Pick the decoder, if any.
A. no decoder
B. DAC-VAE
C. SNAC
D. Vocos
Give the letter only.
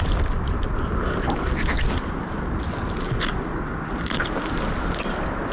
A